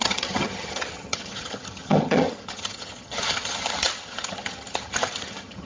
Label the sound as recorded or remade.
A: remade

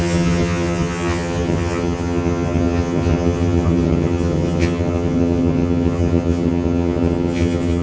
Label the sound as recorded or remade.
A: remade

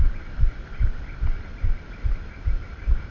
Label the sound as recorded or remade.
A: recorded